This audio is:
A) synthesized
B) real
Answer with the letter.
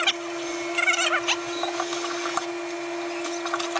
B